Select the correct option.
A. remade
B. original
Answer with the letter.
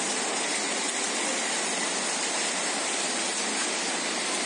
B